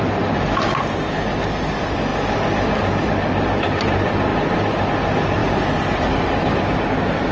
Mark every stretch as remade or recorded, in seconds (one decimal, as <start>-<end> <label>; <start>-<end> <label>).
0.0-7.3 recorded